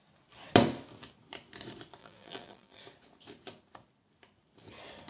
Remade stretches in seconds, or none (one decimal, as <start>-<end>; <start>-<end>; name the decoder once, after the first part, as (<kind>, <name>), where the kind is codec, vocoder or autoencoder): 2.0-2.8 (vocoder, BigVGAN v2)